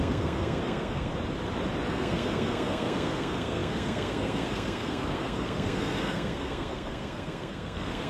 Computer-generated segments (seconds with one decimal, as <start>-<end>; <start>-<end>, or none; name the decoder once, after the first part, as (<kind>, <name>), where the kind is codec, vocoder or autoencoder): 0.0-1.1 (codec, SNAC); 1.9-8.1